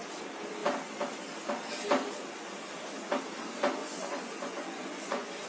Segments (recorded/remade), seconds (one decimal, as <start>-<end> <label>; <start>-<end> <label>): 0.0-3.8 recorded; 3.8-5.5 remade